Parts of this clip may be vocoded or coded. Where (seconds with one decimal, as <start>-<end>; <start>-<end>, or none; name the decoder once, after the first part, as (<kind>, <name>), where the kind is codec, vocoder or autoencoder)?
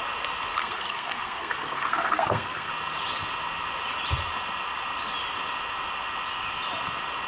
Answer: 0.6-2.7 (codec, SNAC)